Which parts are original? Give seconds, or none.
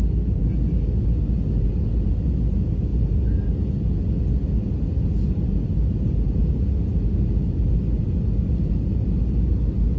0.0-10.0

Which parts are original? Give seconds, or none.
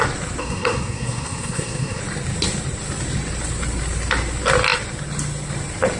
0.0-0.4; 2.0-6.0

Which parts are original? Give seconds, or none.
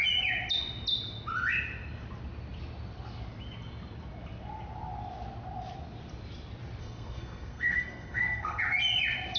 0.0-6.8; 8.6-9.4